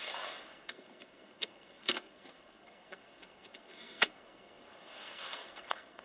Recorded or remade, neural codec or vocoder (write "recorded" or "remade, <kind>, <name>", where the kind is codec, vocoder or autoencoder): remade, codec, SNAC